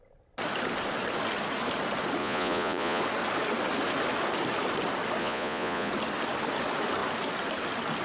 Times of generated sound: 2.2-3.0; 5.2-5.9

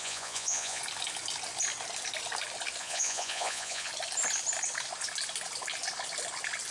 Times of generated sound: 0.0-0.8; 2.8-3.9